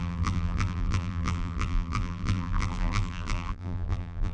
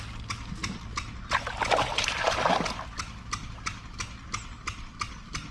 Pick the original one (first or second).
second